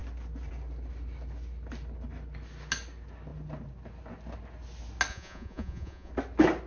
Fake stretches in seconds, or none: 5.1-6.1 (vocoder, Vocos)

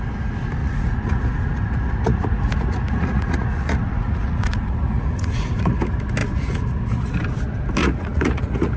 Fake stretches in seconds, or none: 0.6-5.8 (vocoder, Vocos); 6.2-6.8; 7.8-8.8

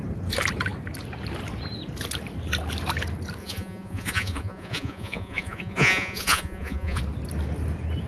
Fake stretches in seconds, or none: 3.4-7.0 (vocoder, Vocos)

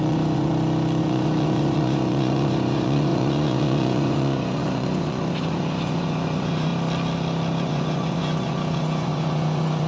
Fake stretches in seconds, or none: 0.0-0.5 (vocoder, Vocos); 1.0-6.7; 7.6-9.9

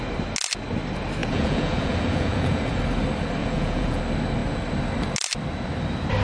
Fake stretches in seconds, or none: 1.2-2.8 (vocoder, Vocos); 3.4-4.0